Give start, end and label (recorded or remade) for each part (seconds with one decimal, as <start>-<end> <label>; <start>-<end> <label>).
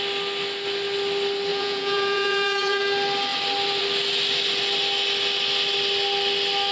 0.0-1.5 recorded; 1.5-2.8 remade; 2.8-6.7 recorded